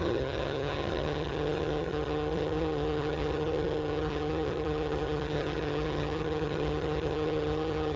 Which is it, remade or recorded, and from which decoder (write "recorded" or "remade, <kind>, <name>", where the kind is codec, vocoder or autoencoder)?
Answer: remade, vocoder, HiFi-GAN